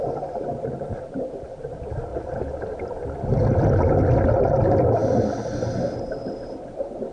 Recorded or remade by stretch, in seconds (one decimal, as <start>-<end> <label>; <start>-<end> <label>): 0.0-2.1 recorded; 2.1-3.8 remade; 3.8-5.0 recorded; 5.0-5.5 remade; 5.5-7.1 recorded